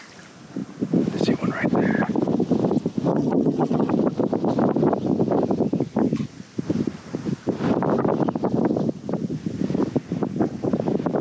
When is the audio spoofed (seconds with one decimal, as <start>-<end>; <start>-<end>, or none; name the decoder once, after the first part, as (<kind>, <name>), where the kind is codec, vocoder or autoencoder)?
3.1-3.9 (vocoder, HiFi-GAN)